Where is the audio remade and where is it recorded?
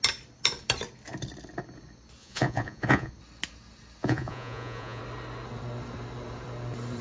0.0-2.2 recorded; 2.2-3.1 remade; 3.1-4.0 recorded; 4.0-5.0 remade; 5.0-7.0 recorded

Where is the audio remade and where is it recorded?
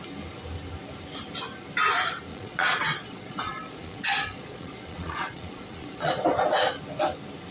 0.0-2.3 recorded; 2.3-6.1 remade; 6.1-7.5 recorded